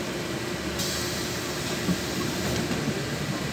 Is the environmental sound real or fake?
real